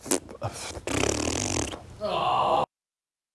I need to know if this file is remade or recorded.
recorded